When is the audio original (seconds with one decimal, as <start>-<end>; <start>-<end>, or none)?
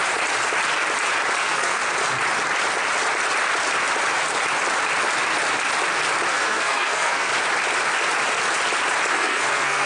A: 0.0-1.4; 1.8-6.3; 7.3-9.1